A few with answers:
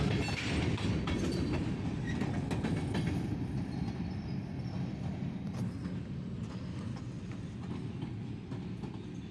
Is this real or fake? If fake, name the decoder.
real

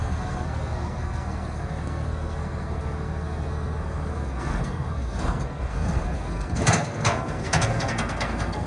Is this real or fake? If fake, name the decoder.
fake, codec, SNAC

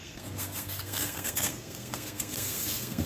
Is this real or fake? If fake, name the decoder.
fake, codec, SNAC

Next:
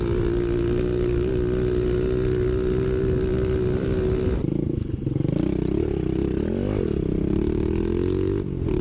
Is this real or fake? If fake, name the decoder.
real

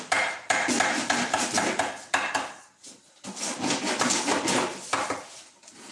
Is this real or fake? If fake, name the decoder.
real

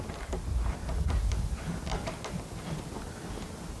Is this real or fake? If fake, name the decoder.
real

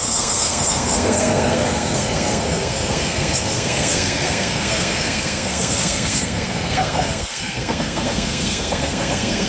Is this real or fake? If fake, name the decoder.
fake, codec, SNAC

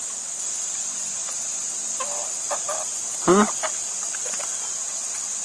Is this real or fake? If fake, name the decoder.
real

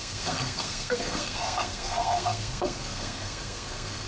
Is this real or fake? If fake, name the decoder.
fake, codec, SNAC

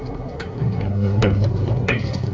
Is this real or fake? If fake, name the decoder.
fake, codec, SNAC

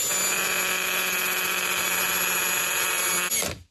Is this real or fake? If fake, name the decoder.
real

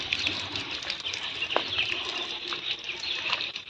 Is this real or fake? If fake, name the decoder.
real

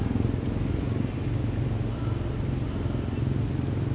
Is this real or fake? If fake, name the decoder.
real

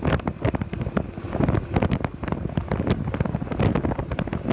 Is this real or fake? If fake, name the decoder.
real